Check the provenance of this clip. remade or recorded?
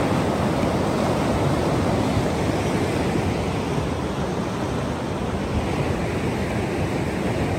recorded